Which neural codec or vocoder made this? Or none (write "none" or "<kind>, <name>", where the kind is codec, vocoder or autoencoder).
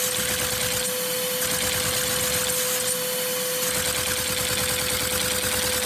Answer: none